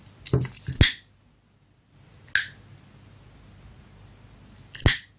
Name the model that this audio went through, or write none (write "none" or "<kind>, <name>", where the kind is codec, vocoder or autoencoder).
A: none